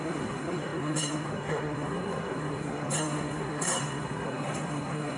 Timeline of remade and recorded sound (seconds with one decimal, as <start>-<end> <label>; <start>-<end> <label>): 0.0-5.2 remade

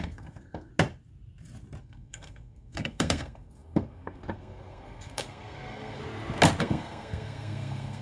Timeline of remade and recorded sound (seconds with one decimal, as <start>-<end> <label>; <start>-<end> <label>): 0.0-0.7 remade; 0.7-1.8 recorded; 1.8-6.0 remade; 6.0-6.6 recorded; 6.6-8.0 remade

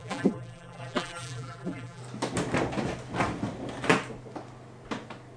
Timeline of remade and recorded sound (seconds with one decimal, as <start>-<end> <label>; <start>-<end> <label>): 0.0-2.0 remade; 2.0-5.4 recorded

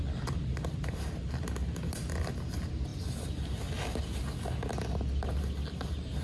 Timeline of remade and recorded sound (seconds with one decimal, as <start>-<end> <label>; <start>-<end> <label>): 0.0-6.2 recorded

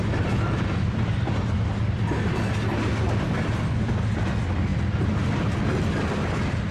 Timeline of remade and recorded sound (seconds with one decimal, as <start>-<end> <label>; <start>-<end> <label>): 0.0-6.7 recorded

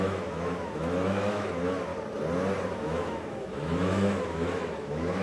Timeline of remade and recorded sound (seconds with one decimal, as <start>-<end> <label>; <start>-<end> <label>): 0.0-1.9 remade; 1.9-2.8 recorded; 2.8-5.2 remade

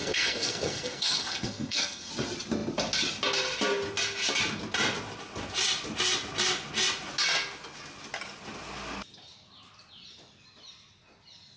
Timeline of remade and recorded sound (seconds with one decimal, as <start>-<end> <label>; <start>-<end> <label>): 0.0-2.1 remade; 2.1-11.6 recorded

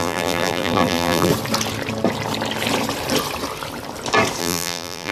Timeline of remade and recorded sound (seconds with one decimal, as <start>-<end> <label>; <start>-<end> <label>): 0.0-1.3 remade; 1.3-4.4 recorded; 4.4-5.1 remade